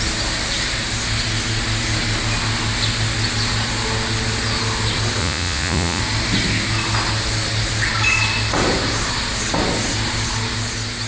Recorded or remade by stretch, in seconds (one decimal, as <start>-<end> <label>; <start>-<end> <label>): 0.0-5.2 recorded; 5.2-6.0 remade; 6.0-11.1 recorded